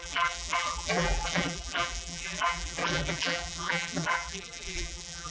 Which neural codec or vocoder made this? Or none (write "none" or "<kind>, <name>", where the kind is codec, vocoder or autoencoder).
vocoder, BigVGAN v2